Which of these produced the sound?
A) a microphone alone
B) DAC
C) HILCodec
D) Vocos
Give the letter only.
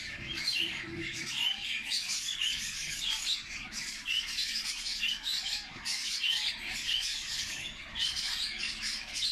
B